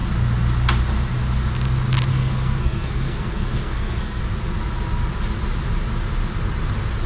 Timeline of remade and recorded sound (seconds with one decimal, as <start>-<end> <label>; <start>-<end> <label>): 0.0-2.1 recorded; 2.1-4.2 remade; 4.2-7.1 recorded